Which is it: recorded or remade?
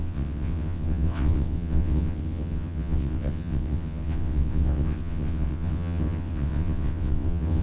remade